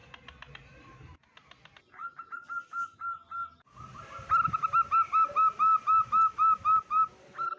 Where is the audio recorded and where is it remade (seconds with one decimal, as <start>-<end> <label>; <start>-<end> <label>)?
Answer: 0.0-7.6 recorded